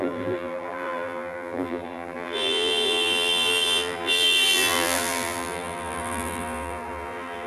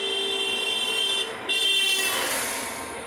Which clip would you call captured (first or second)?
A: second